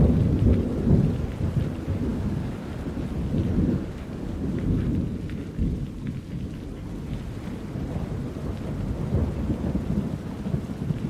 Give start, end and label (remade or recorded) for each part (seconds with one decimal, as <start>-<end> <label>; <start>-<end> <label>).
0.0-2.1 recorded; 2.1-2.7 remade; 2.7-3.5 recorded; 3.5-4.8 remade; 4.8-11.1 recorded